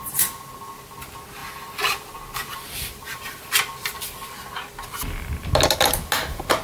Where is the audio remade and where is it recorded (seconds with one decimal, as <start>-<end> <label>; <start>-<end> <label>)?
0.0-1.4 recorded; 1.4-4.3 remade; 4.3-6.6 recorded